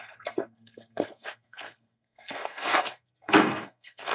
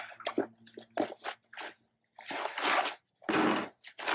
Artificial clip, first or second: first